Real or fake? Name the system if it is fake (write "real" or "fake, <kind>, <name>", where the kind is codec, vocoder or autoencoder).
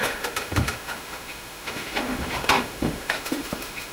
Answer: fake, autoencoder, DAC-VAE